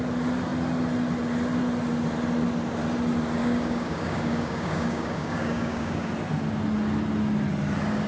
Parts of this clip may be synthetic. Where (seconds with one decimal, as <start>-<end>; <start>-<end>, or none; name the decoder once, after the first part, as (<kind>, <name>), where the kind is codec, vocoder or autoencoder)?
3.4-6.1 (codec, DAC)